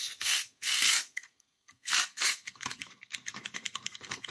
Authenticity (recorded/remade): remade